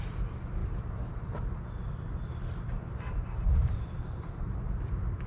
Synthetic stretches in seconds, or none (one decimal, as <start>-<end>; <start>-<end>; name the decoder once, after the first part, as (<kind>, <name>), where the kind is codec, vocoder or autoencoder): none